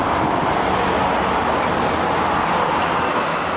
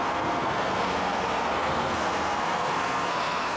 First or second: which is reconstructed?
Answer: second